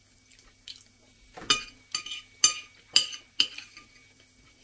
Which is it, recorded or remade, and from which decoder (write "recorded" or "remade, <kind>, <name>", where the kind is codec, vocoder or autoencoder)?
recorded